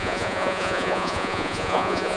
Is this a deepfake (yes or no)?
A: yes